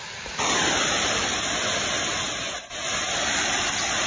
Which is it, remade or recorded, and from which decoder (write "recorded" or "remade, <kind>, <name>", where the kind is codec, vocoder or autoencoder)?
recorded